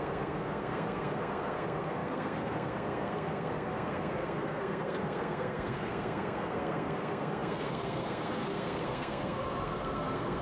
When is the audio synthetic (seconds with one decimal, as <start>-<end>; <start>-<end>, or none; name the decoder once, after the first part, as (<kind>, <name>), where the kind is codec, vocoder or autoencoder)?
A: 0.0-10.4 (codec, SNAC)